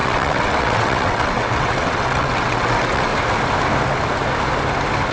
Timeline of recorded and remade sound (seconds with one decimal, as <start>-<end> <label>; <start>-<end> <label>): 0.0-3.1 remade; 3.1-5.1 recorded